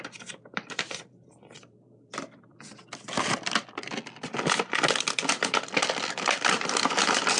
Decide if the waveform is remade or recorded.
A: remade